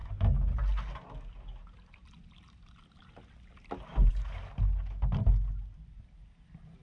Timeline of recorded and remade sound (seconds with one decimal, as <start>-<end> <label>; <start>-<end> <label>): 0.0-6.8 recorded